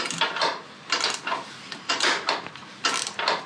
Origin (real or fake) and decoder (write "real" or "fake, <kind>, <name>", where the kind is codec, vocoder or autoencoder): real